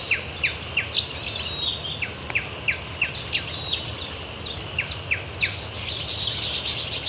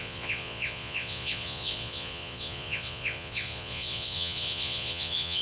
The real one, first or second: first